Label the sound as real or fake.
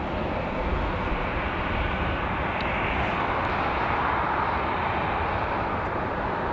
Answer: real